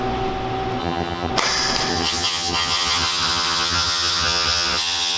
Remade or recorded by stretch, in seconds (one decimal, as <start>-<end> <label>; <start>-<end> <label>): 0.0-0.8 recorded; 0.8-1.3 remade; 1.3-1.9 recorded; 1.9-5.2 remade